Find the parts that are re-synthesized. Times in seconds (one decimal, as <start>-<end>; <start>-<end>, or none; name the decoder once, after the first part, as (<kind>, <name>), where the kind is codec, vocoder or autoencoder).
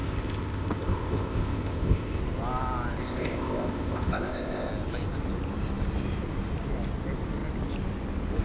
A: 0.0-2.2 (codec, ZipCodec); 3.0-4.7